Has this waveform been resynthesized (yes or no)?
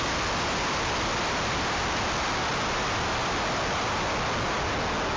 no